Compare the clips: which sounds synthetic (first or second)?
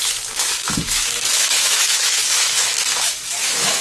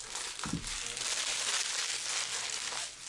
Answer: first